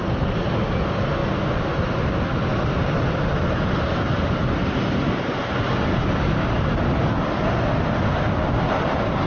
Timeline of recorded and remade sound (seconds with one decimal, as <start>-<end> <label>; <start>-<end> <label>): 0.0-9.3 recorded